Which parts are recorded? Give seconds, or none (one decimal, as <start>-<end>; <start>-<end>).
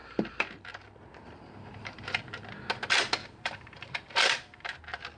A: 1.0-1.8; 2.5-3.2; 4.8-5.2